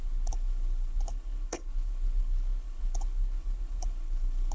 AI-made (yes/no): yes